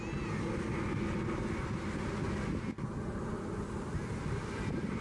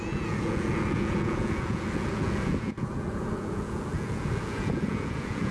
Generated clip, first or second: second